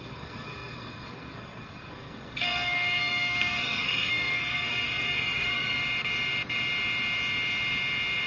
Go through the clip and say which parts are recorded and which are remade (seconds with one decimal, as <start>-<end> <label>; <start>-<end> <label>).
0.0-5.8 remade; 5.8-8.3 recorded